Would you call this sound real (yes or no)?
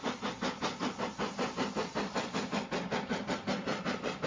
yes